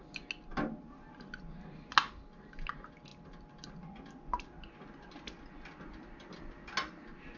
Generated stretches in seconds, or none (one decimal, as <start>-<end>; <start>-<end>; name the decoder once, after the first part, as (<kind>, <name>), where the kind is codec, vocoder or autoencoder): none